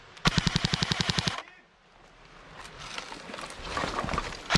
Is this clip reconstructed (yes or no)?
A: no